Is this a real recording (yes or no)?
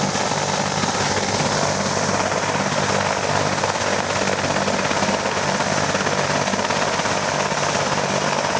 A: yes